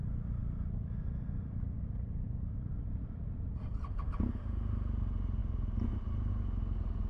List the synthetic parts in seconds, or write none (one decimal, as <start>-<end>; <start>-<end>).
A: 0.4-4.0